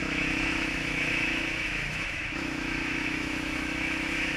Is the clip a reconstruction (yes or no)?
yes